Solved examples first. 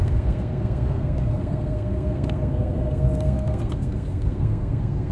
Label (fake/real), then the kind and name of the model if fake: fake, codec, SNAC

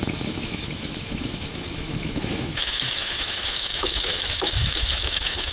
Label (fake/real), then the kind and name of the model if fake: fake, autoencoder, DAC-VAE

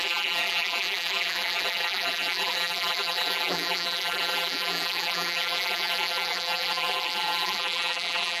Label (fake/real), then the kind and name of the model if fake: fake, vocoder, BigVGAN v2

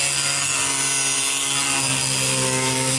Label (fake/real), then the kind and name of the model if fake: real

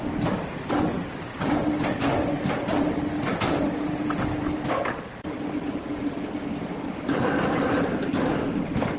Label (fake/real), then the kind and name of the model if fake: real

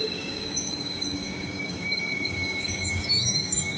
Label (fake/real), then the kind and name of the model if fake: fake, codec, DAC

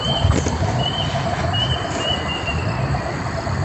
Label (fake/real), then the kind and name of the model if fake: real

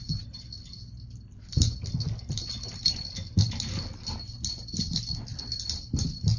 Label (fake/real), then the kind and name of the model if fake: real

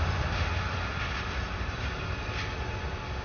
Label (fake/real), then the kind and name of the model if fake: real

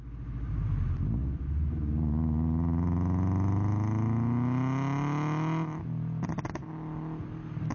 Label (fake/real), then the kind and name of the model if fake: real